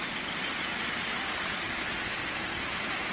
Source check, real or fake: real